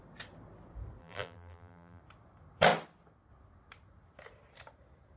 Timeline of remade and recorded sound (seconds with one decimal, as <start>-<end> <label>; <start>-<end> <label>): 0.0-1.0 recorded; 1.0-2.0 remade; 2.0-5.2 recorded